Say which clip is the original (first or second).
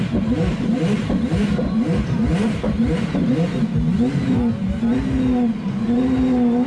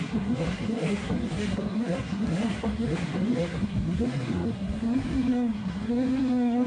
first